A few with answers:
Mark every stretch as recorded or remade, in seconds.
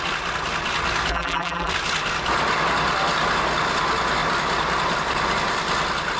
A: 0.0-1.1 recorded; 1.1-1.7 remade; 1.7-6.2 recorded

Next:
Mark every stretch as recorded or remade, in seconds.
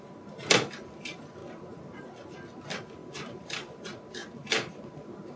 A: 0.0-1.4 recorded; 1.4-2.0 remade; 2.0-3.0 recorded; 3.0-3.7 remade; 3.7-4.2 recorded; 4.2-5.4 remade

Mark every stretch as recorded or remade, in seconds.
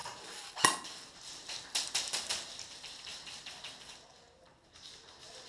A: 0.0-5.5 recorded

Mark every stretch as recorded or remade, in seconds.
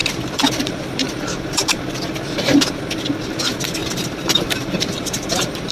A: 0.0-2.8 remade; 2.8-3.8 recorded; 3.8-5.7 remade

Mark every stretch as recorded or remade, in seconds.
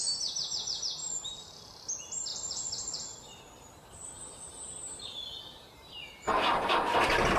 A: 0.0-1.0 recorded; 1.0-1.8 remade; 1.8-2.3 recorded; 2.3-6.7 remade; 6.7-7.4 recorded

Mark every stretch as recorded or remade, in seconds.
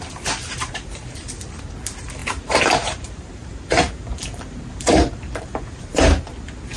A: 0.0-0.6 recorded; 0.6-1.2 remade; 1.2-2.2 recorded; 2.2-6.3 remade; 6.3-6.8 recorded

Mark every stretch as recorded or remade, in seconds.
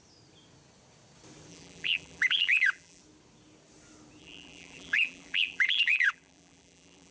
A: 0.0-1.5 recorded; 1.5-3.0 remade; 3.0-4.2 recorded; 4.2-7.1 remade